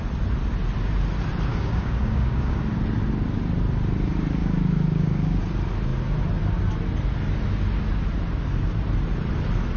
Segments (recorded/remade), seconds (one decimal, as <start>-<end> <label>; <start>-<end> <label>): 0.0-1.5 recorded; 1.5-2.6 remade; 2.6-4.4 recorded; 4.4-5.4 remade; 5.4-9.8 recorded